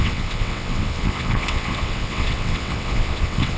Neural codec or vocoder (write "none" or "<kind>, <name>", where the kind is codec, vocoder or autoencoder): vocoder, WaveNeXt